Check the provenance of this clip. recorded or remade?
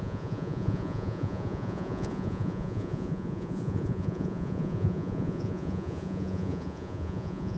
remade